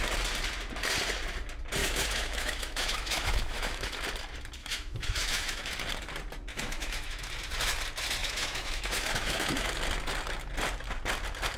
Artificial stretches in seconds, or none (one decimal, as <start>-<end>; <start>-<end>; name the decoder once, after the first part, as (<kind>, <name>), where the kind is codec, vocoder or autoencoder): 1.8-4.0 (autoencoder, DAC-VAE); 4.6-5.7; 6.5-7.3; 8.2-9.7